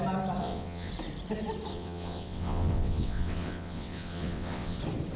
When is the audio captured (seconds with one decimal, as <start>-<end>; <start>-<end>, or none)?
0.0-0.4; 0.9-1.7; 4.8-5.2